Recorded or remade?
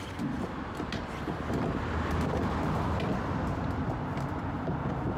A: recorded